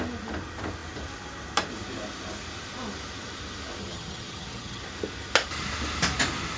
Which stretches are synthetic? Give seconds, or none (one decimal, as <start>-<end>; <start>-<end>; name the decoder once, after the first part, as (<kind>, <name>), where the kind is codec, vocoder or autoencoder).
3.8-4.8 (vocoder, HiFi-GAN)